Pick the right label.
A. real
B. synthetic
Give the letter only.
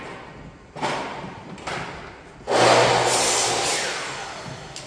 A